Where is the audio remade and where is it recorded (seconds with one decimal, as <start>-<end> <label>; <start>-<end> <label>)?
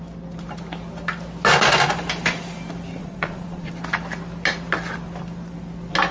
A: 0.0-3.0 recorded; 3.0-3.7 remade; 3.7-6.1 recorded